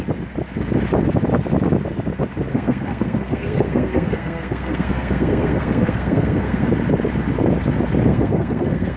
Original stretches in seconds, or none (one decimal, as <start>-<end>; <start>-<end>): 0.0-2.5; 6.7-8.1